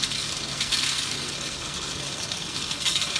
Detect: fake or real fake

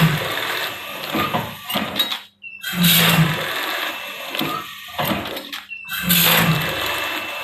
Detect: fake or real real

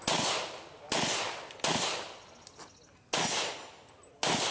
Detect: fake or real real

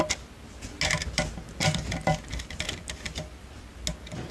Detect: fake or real real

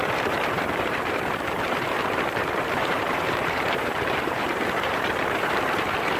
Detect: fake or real fake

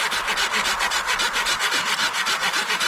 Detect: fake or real real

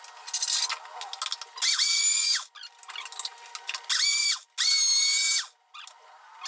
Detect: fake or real real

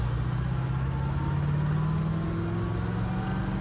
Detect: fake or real real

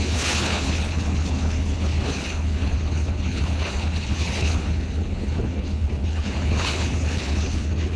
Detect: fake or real fake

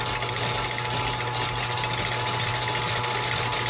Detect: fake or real real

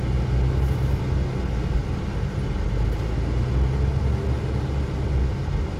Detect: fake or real real